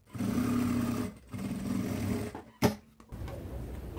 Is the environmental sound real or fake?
real